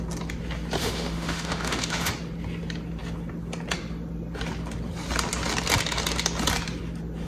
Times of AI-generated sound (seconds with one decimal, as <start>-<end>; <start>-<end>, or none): 0.8-2.1

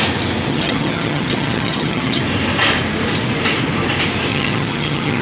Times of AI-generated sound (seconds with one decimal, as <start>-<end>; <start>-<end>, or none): 0.5-2.2; 4.3-5.2

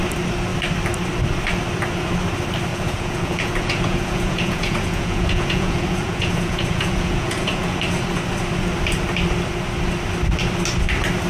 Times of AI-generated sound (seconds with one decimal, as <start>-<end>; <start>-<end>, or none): 2.7-7.8

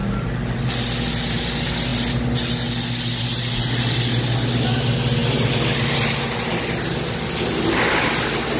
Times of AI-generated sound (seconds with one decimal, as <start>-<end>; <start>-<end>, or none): none

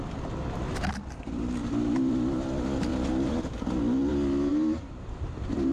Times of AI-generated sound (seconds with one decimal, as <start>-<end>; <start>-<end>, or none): 4.5-5.7